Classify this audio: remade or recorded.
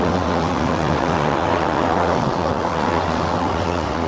remade